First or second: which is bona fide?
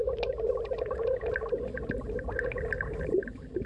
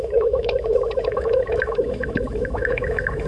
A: first